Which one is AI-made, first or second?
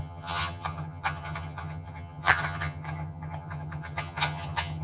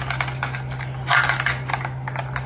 first